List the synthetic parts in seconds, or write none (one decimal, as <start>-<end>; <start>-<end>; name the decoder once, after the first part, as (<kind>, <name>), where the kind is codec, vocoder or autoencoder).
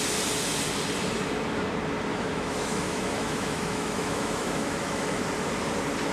2.1-5.2 (autoencoder, DAC-VAE)